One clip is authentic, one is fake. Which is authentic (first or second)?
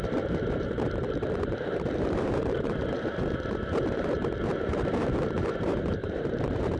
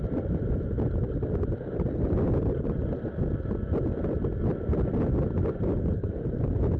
second